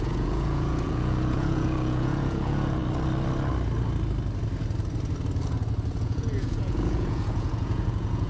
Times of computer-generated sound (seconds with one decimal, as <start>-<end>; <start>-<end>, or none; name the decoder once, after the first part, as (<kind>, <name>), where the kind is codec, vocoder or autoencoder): 0.0-2.8 (vocoder, Vocos); 6.0-8.3